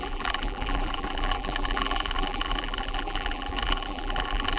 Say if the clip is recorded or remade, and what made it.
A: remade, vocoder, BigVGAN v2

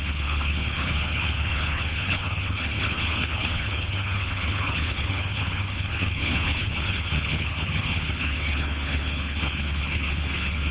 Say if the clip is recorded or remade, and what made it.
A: remade, codec, HILCodec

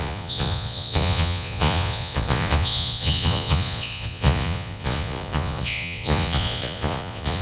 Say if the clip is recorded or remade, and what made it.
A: remade, vocoder, Vocos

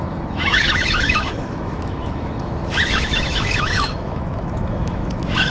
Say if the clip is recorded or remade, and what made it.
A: remade, autoencoder, DAC-VAE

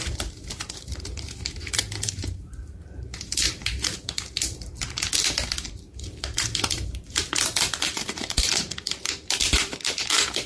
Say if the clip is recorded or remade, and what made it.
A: remade, vocoder, BigVGAN v2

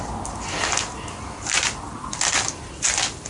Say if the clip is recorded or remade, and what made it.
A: recorded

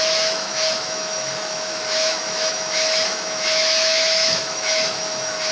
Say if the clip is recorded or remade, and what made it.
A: remade, autoencoder, DAC-VAE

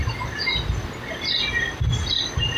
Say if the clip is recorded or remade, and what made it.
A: recorded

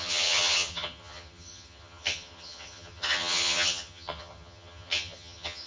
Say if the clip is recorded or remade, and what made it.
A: remade, vocoder, HiFi-GAN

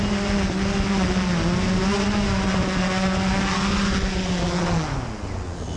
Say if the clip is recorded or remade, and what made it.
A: recorded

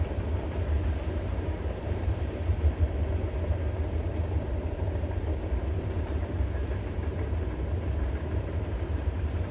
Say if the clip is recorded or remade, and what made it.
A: remade, vocoder, BigVGAN v2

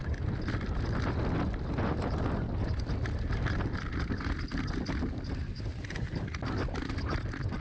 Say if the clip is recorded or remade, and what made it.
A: recorded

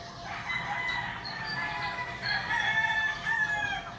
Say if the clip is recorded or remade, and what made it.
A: recorded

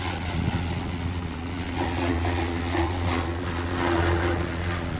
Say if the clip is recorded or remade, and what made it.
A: remade, vocoder, Vocos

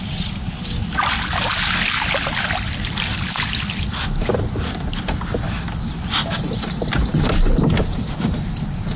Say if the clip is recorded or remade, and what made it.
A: recorded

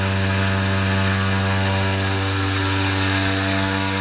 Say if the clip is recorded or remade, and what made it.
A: recorded